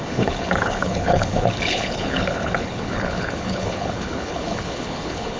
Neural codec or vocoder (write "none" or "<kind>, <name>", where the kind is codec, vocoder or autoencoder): codec, HILCodec